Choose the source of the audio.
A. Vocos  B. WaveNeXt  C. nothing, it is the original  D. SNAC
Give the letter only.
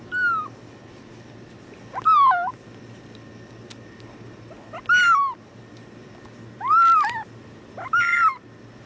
C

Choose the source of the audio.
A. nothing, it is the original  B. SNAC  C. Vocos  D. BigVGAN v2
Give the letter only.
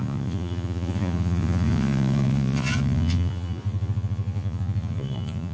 C